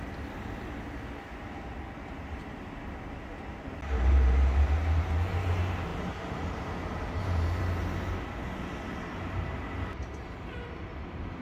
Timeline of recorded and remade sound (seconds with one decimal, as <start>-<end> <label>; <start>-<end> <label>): 0.0-11.4 recorded